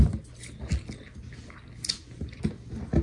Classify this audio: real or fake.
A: real